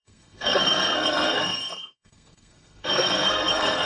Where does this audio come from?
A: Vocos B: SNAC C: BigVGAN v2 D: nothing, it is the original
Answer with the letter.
B